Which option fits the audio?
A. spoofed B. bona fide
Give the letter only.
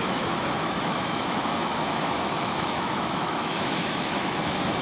A